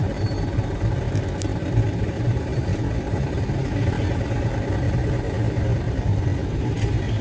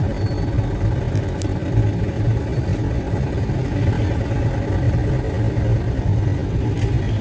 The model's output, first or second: first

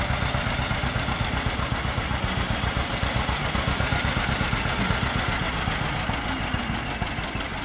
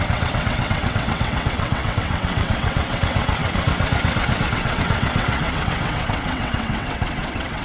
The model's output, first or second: second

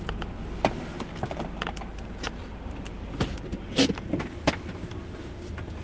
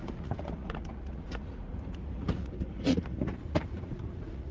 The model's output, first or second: second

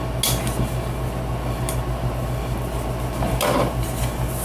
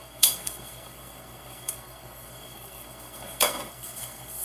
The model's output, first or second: second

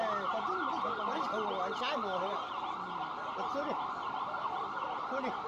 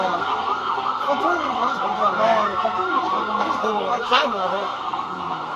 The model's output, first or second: second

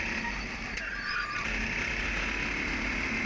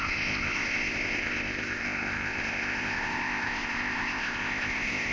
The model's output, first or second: second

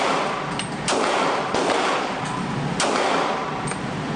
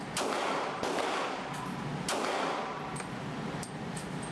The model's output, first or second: first